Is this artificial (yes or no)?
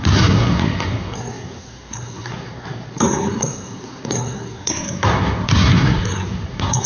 yes